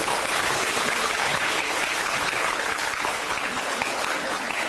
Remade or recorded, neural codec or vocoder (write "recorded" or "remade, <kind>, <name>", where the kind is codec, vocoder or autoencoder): remade, codec, HILCodec